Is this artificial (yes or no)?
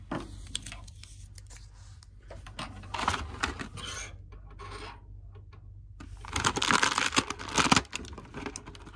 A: no